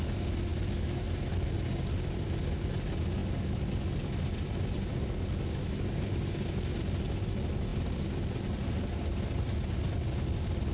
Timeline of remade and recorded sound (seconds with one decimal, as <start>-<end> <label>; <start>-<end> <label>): 0.0-10.7 recorded